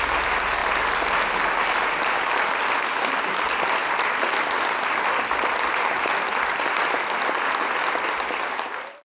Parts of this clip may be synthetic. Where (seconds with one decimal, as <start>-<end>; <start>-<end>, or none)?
none

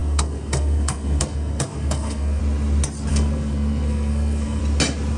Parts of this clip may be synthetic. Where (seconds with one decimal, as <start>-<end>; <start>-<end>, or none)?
0.0-2.4; 3.1-4.6

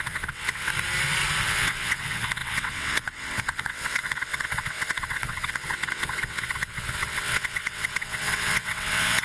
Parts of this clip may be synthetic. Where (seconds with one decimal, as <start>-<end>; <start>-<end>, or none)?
0.0-0.7; 1.4-9.2

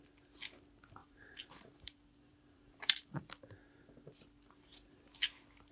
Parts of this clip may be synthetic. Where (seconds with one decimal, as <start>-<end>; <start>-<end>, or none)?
1.0-3.2

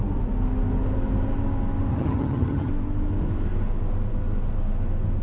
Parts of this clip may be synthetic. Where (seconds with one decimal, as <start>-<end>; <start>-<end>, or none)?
1.9-2.7

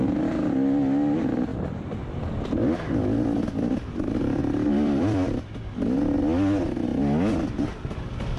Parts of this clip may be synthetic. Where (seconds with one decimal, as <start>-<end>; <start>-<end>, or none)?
1.5-5.7